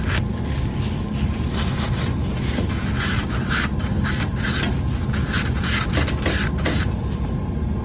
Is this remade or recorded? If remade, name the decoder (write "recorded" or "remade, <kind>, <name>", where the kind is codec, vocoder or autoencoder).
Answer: recorded